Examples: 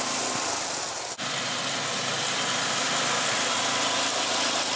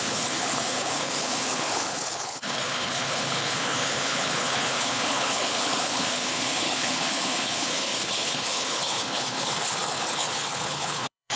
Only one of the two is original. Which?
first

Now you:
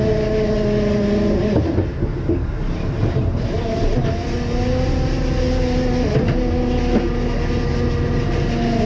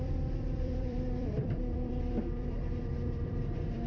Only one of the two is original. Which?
first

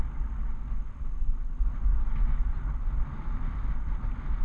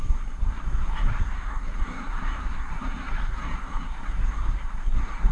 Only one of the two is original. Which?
first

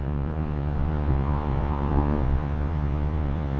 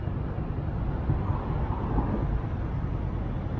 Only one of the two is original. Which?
second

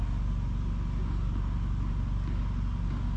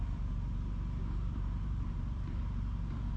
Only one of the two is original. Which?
first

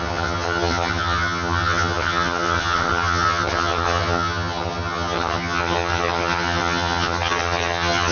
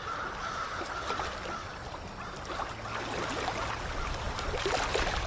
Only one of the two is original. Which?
second